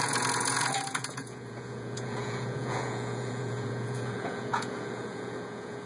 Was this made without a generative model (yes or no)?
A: no